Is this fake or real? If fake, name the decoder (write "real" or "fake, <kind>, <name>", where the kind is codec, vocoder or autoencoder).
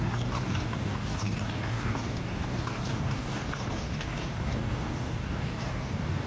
fake, codec, DAC